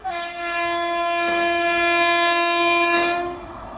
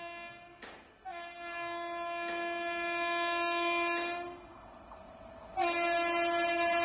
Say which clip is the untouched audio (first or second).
second